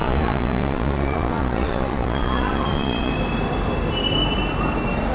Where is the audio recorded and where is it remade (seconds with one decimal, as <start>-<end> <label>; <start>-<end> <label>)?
0.0-3.1 remade; 3.1-5.1 recorded